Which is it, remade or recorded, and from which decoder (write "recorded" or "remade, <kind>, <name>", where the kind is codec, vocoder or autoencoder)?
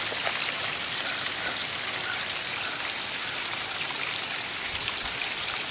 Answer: recorded